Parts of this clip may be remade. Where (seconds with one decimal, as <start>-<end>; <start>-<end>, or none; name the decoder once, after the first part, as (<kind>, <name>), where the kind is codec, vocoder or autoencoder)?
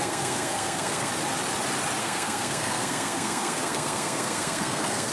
0.0-1.1 (codec, SNAC); 2.0-5.1